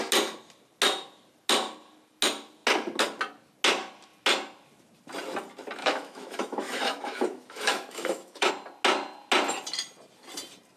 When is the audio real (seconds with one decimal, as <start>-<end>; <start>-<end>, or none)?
0.0-5.8; 8.5-10.8